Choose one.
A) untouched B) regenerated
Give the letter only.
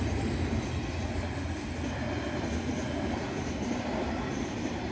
A